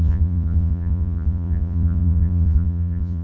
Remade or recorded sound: remade